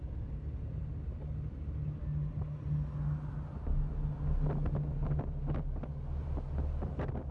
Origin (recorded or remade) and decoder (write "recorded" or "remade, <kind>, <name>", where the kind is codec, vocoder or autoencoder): recorded